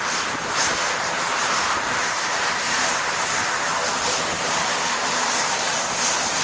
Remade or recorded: remade